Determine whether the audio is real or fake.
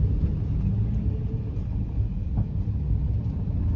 real